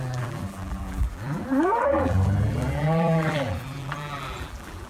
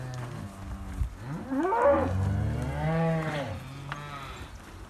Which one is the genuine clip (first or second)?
second